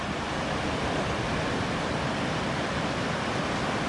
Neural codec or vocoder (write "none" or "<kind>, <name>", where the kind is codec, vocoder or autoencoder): none